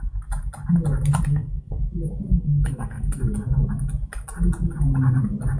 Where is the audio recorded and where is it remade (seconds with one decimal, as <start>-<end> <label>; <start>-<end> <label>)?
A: 0.0-1.3 recorded; 1.3-1.8 remade; 1.8-2.3 recorded; 2.3-3.2 remade; 3.2-5.6 recorded